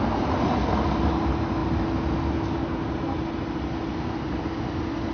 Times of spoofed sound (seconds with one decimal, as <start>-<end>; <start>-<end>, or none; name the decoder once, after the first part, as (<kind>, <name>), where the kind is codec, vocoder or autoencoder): none